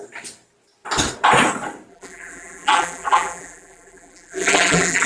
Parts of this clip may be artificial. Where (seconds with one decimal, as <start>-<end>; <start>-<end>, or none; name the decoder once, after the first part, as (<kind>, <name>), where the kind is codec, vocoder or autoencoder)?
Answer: 1.9-5.1 (vocoder, BigVGAN v2)